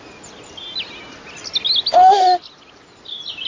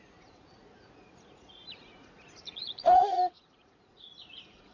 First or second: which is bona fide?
first